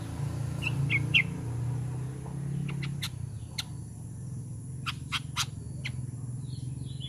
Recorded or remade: recorded